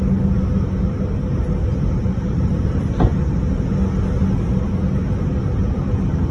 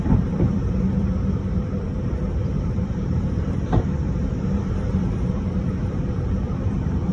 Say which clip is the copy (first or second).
second